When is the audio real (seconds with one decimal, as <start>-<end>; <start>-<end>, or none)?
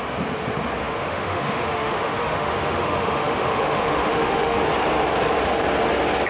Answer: 0.0-0.8; 4.6-6.3